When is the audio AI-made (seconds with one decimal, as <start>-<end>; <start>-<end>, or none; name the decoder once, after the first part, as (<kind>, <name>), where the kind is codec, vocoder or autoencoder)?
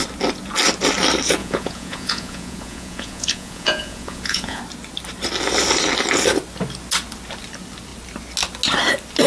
1.4-4.6 (vocoder, Vocos)